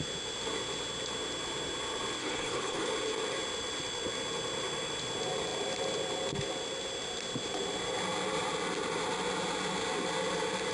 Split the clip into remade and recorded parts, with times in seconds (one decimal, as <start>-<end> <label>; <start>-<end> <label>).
0.0-2.2 recorded; 2.2-2.9 remade; 2.9-10.7 recorded